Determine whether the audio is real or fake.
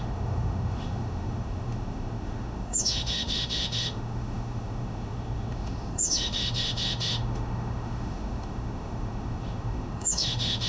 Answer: fake